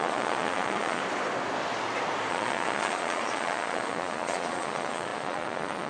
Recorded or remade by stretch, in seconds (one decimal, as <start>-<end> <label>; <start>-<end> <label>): 0.0-1.0 remade; 1.0-2.3 recorded; 2.3-5.9 remade